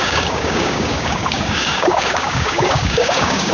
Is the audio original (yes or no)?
no